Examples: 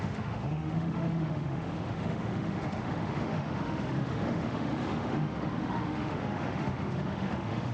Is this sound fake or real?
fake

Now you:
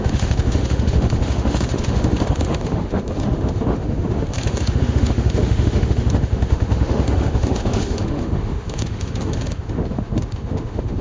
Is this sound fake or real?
fake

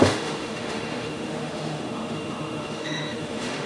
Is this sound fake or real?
fake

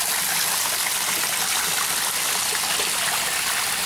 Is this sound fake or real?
real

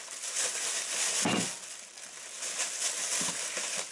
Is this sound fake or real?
real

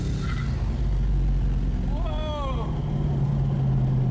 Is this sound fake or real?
real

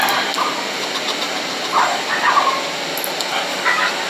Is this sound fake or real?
real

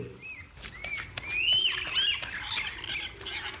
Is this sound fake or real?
real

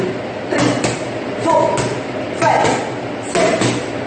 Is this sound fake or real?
real